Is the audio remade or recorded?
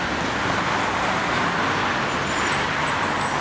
recorded